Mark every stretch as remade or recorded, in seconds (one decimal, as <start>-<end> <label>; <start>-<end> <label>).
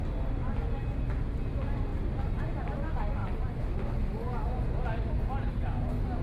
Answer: 0.0-6.2 recorded